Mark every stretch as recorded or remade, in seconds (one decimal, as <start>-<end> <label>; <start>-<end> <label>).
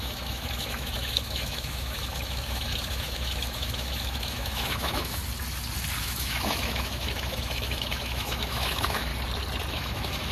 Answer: 0.0-5.2 remade; 5.2-6.0 recorded; 6.0-9.1 remade; 9.1-9.7 recorded; 9.7-10.3 remade